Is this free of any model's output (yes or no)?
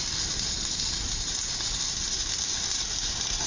yes